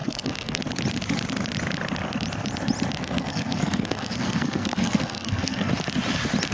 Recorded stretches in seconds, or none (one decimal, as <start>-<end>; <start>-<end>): 0.6-3.0; 5.7-6.5